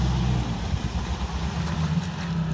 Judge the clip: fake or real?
real